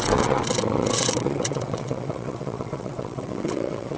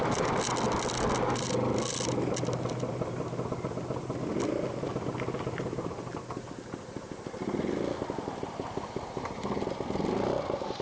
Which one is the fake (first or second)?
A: first